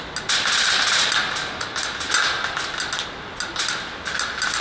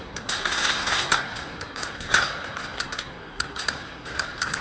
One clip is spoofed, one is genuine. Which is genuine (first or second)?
first